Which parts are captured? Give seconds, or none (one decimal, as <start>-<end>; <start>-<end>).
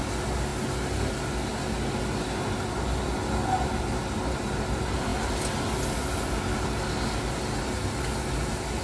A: 0.0-8.8